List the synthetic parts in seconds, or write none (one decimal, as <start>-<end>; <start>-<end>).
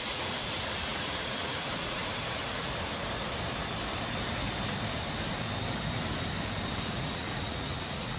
0.0-2.0; 6.9-8.2